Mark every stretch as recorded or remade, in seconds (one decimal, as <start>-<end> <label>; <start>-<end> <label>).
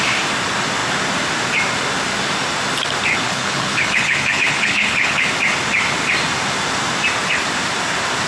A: 0.0-3.1 recorded; 3.1-5.3 remade; 5.3-8.3 recorded